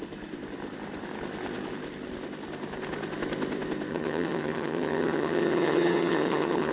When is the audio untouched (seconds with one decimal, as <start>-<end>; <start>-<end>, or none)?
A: 0.0-3.9